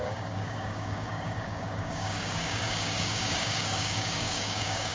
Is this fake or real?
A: fake